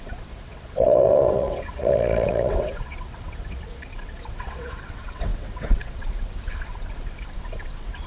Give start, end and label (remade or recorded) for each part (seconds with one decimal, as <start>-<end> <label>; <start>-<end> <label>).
0.0-8.1 remade